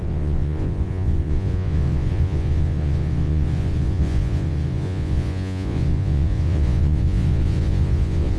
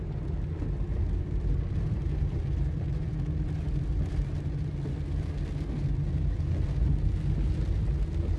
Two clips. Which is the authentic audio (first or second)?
second